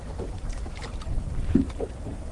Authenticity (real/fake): fake